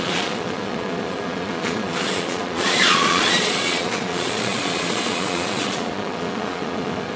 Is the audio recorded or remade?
remade